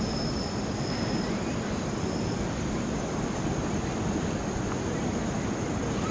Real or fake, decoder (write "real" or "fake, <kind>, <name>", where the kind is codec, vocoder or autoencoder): real